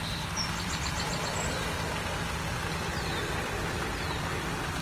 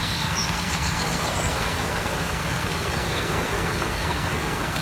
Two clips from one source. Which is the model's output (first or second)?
second